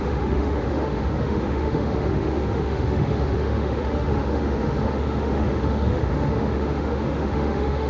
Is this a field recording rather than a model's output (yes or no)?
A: no